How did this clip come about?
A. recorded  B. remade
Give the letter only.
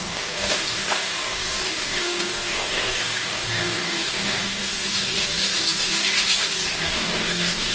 B